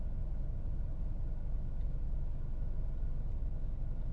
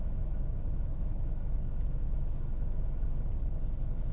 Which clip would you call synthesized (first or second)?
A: second